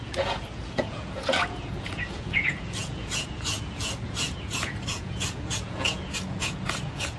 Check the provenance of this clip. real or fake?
fake